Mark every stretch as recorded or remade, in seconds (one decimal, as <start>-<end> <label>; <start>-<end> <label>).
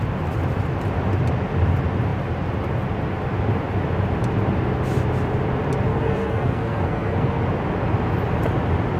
0.0-5.9 recorded; 5.9-7.4 remade; 7.4-9.0 recorded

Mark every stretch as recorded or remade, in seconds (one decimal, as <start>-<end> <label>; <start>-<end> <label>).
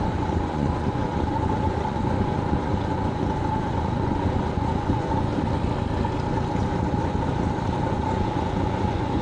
0.0-5.3 remade; 5.3-7.9 recorded; 7.9-9.2 remade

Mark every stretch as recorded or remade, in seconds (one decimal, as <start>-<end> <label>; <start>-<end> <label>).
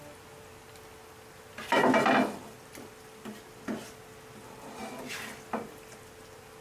0.0-4.8 recorded; 4.8-6.0 remade; 6.0-6.6 recorded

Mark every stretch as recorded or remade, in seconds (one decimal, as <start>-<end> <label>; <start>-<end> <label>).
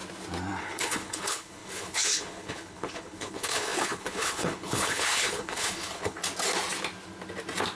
0.0-0.6 recorded; 0.6-6.2 remade; 6.2-7.8 recorded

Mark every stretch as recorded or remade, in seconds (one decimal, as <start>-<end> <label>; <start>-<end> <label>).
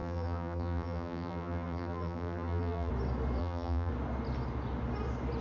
0.0-2.9 remade; 2.9-3.4 recorded; 3.4-3.9 remade; 3.9-5.4 recorded